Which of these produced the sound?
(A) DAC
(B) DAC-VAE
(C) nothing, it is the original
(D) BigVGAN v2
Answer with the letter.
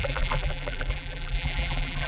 D